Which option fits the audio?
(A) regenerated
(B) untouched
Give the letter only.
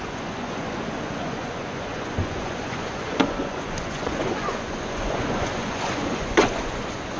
A